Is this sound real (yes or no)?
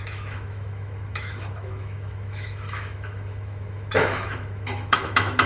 no